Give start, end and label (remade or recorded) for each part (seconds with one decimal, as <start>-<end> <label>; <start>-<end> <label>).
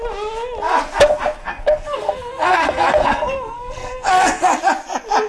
0.0-1.4 recorded; 1.4-4.6 remade; 4.6-5.3 recorded